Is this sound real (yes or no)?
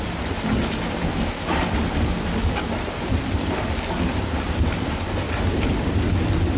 yes